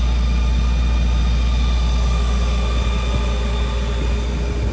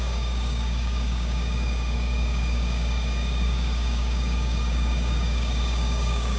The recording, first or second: first